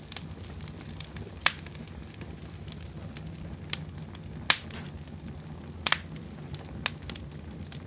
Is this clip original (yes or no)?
yes